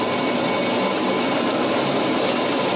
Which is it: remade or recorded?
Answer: recorded